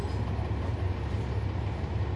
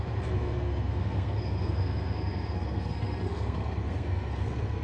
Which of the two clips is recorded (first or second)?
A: first